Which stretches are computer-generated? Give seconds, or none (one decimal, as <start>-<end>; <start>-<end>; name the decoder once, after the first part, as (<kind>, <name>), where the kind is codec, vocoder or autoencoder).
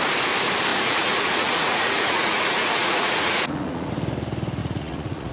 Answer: 0.7-3.9 (vocoder, Vocos); 4.6-5.3